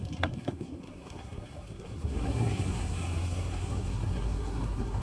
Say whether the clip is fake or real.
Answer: fake